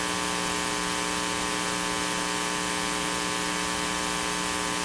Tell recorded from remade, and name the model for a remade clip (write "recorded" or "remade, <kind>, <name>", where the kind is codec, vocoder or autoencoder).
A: recorded